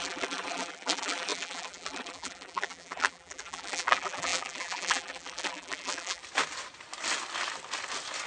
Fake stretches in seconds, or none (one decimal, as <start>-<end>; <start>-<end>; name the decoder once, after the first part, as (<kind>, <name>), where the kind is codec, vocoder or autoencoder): 0.0-6.2 (vocoder, BigVGAN v2)